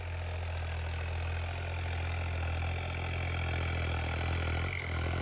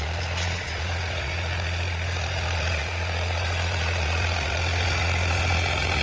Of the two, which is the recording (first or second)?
first